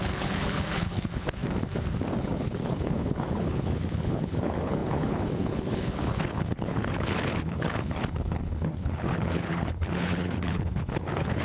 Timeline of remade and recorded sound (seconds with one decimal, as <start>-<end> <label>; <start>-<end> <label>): 0.0-1.4 remade; 1.4-2.2 recorded; 2.2-11.4 remade

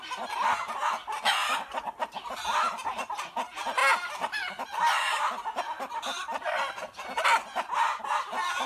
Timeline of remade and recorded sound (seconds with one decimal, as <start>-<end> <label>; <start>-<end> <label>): 0.0-8.7 recorded